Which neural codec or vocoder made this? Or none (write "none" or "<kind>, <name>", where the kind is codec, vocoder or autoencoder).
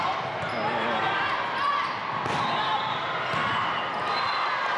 none